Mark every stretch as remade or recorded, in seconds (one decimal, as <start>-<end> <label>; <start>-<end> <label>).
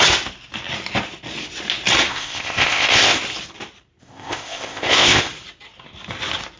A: 0.0-2.1 recorded; 2.1-3.2 remade; 3.2-4.0 recorded; 4.0-5.3 remade; 5.3-6.6 recorded